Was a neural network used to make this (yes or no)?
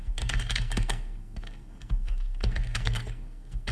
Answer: yes